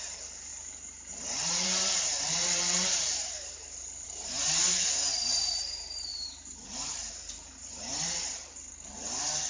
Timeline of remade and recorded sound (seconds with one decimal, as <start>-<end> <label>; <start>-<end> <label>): 0.0-0.5 recorded; 0.5-4.6 remade; 4.6-6.1 recorded; 6.1-8.7 remade; 8.7-9.5 recorded